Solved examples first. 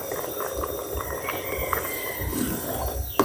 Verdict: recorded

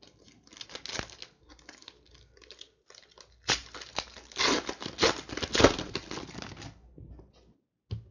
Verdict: recorded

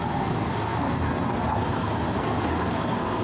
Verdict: remade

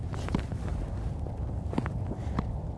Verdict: remade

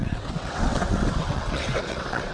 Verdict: remade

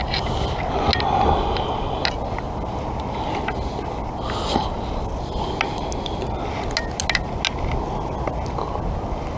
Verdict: recorded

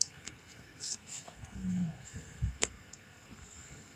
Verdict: remade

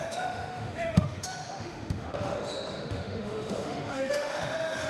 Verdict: remade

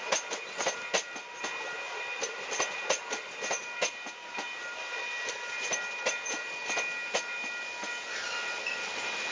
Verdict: recorded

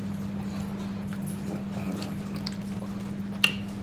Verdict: recorded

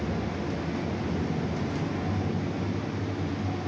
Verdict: recorded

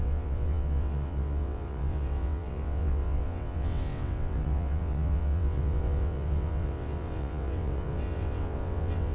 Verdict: remade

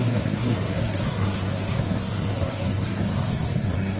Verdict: remade